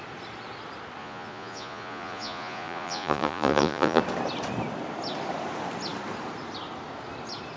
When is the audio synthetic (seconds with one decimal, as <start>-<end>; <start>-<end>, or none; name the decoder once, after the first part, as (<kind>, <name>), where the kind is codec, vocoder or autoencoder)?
1.0-4.0 (vocoder, Vocos)